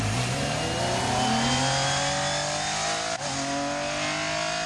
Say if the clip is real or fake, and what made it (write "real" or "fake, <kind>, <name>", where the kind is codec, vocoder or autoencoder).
real